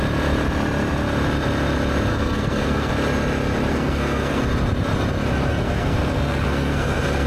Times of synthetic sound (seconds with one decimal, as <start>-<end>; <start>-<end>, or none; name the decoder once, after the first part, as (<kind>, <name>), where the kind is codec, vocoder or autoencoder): 2.1-2.9 (codec, SNAC); 3.7-4.4; 5.5-7.3